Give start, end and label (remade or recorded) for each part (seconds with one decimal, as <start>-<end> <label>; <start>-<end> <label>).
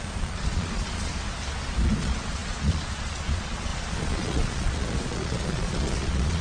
0.0-1.1 remade; 1.1-2.0 recorded; 2.0-6.4 remade